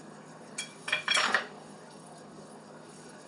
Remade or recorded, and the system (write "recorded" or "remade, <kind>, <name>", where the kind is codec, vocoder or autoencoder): remade, codec, DAC